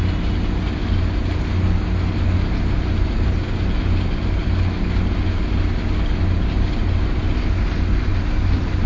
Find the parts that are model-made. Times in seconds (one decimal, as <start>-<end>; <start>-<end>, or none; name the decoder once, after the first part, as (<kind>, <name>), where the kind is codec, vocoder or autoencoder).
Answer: none